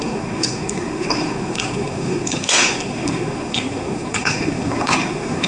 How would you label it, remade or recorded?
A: remade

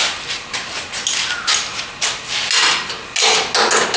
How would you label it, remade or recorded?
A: recorded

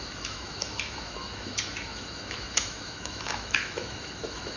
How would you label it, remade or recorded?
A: remade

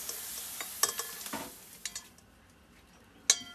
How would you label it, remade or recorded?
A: recorded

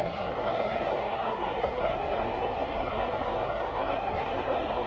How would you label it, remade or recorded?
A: remade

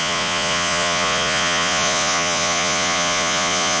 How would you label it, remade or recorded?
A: remade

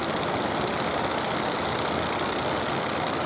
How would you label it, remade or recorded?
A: recorded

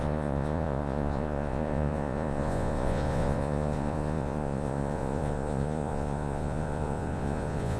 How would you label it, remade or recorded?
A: remade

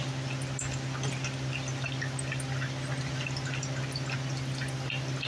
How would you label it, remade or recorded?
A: recorded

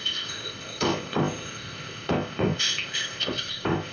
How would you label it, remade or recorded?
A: remade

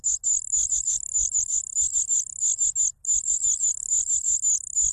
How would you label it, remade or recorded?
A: recorded